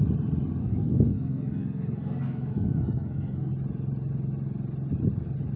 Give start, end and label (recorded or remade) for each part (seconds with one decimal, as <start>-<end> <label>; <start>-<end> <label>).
0.0-0.6 recorded; 0.6-3.5 remade; 3.5-5.6 recorded